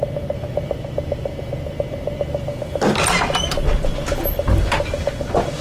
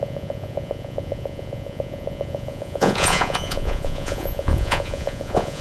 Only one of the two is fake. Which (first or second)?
second